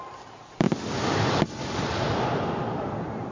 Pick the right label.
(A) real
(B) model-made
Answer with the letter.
A